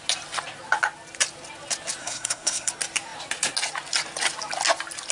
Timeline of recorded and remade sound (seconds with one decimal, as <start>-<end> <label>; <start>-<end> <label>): 0.0-2.0 recorded; 2.0-2.7 remade; 2.7-5.1 recorded